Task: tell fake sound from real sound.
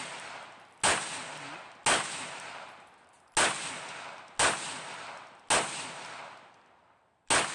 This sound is real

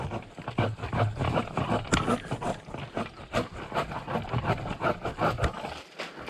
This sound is real